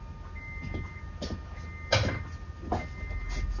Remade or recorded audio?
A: recorded